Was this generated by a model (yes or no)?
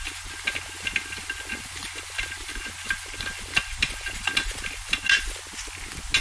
no